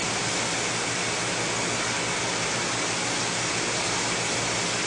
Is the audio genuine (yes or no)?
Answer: yes